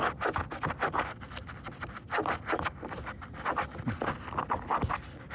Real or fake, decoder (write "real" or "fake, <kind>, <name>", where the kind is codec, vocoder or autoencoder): real